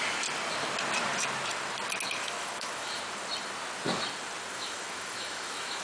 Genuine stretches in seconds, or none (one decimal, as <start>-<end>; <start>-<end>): 0.0-2.2; 3.0-4.5